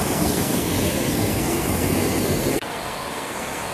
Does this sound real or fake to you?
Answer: fake